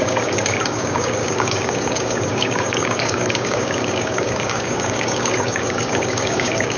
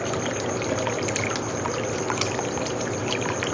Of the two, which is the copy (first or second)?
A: first